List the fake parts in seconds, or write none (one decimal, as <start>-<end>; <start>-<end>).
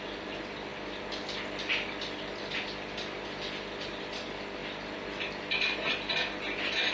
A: none